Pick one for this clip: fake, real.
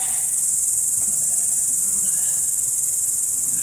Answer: real